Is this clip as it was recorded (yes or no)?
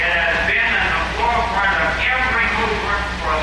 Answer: yes